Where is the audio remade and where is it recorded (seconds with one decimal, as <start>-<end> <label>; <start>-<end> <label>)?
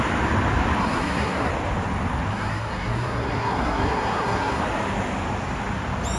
0.0-0.8 recorded; 0.8-1.5 remade; 1.5-2.3 recorded; 2.3-4.6 remade; 4.6-6.2 recorded